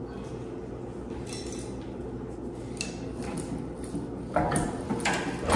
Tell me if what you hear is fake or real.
real